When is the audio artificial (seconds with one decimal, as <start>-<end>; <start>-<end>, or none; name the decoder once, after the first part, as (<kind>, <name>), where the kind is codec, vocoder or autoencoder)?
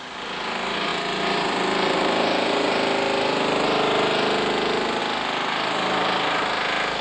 none